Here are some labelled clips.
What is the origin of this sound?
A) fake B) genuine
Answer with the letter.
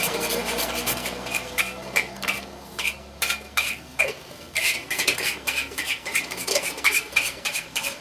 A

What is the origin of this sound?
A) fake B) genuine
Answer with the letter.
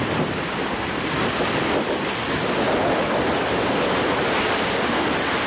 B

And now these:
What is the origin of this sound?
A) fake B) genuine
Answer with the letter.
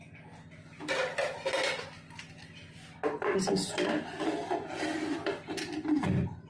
B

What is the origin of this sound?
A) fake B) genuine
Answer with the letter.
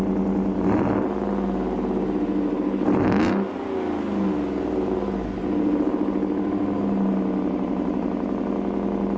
B